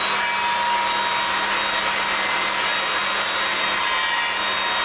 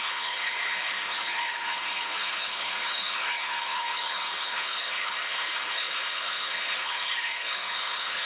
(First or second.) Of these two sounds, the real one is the first